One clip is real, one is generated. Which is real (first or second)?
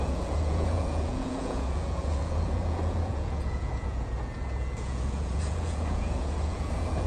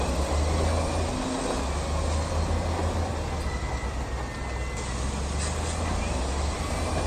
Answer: second